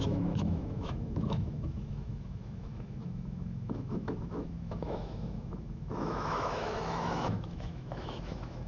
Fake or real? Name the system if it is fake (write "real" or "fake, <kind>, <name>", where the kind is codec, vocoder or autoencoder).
fake, autoencoder, DAC-VAE